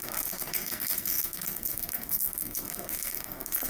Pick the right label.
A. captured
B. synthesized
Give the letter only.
B